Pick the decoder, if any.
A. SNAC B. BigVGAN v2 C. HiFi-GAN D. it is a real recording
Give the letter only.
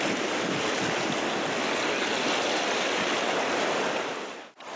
D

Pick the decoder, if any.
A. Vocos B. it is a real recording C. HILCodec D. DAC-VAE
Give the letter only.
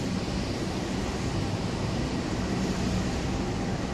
B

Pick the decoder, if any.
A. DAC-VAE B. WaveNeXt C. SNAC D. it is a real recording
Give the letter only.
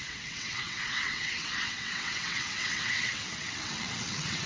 B